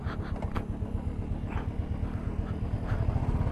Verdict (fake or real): real